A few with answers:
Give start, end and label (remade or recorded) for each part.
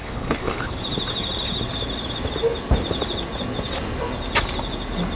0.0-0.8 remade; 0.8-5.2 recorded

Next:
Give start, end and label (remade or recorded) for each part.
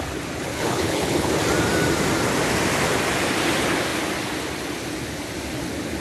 0.0-0.5 recorded; 0.5-1.3 remade; 1.3-6.0 recorded